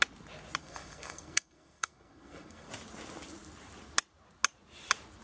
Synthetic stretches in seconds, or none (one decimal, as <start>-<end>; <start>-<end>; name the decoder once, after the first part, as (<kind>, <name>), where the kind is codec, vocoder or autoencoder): 0.6-2.7 (codec, SNAC)

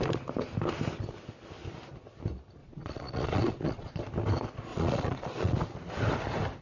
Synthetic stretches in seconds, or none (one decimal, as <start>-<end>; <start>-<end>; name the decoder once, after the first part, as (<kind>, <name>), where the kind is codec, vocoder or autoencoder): 2.6-4.0 (vocoder, Vocos); 4.7-5.6

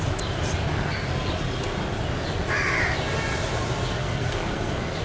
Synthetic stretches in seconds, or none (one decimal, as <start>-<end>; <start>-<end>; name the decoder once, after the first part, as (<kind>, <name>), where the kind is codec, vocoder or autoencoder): 4.0-5.0 (codec, SNAC)

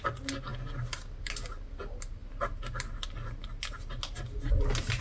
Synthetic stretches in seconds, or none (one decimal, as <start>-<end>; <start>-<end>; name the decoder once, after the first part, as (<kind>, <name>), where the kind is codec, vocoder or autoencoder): none

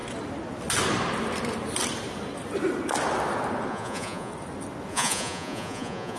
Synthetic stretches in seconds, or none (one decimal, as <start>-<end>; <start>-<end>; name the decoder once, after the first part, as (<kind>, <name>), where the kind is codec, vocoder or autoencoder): 3.7-4.3 (vocoder, Vocos); 4.9-6.2